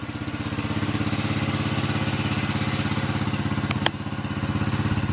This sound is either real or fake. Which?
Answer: real